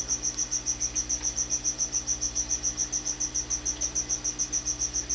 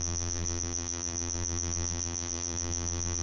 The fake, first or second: second